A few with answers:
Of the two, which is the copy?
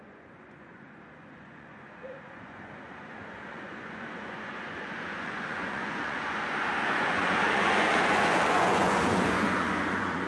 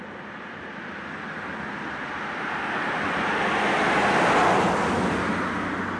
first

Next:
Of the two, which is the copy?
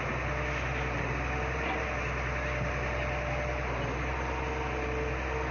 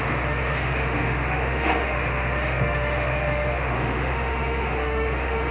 second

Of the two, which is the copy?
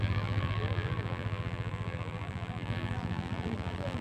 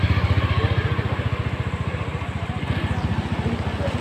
first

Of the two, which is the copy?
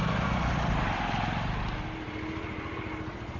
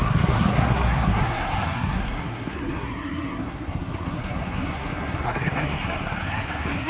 second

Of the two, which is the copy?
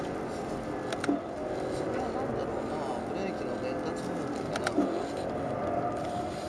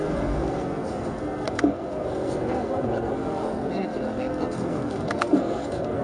second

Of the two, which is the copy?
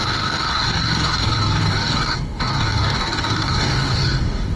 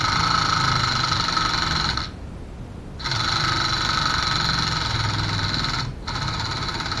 first